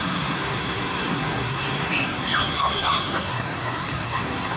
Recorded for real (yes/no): no